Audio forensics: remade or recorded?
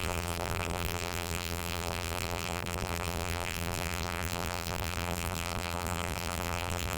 remade